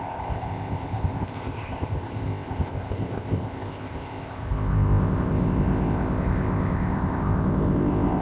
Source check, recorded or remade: remade